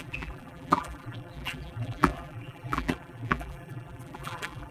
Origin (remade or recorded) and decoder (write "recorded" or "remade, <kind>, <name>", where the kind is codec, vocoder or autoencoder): remade, vocoder, BigVGAN v2